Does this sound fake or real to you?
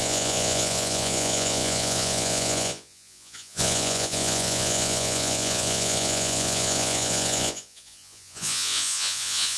fake